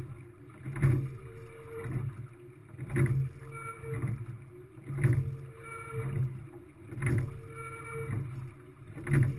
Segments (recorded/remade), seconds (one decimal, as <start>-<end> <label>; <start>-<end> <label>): 0.0-9.4 recorded

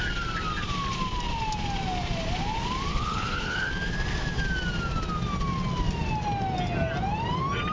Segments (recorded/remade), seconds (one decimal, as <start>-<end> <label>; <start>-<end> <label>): 0.0-2.9 recorded; 2.9-3.7 remade; 3.7-7.7 recorded